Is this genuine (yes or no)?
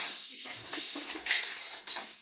no